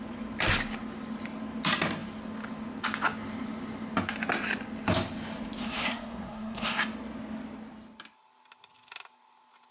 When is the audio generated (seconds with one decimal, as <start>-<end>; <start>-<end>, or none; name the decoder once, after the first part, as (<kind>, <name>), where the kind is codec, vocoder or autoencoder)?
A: 5.6-6.8 (codec, SNAC)